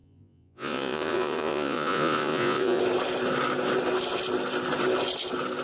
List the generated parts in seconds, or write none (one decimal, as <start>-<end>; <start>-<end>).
0.0-2.8